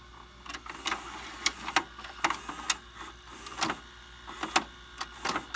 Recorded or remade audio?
recorded